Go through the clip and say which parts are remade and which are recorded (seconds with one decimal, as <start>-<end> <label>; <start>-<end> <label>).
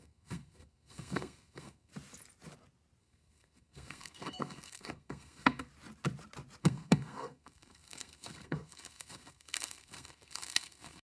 0.0-1.9 remade; 1.9-3.0 recorded; 3.0-5.7 remade; 5.7-6.6 recorded; 6.6-11.0 remade